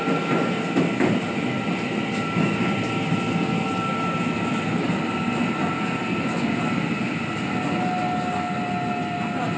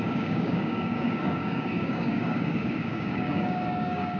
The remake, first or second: second